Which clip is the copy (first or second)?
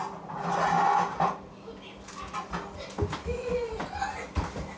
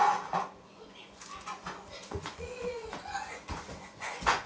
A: second